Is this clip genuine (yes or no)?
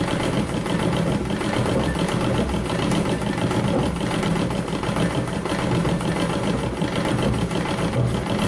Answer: yes